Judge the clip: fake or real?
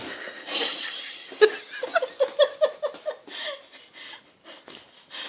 real